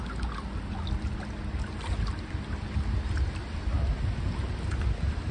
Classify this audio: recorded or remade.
recorded